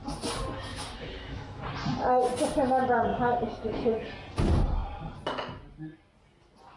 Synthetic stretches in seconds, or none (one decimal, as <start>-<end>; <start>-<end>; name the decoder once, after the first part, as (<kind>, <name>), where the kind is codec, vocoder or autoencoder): 0.7-1.6 (autoencoder, DAC-VAE); 3.1-4.1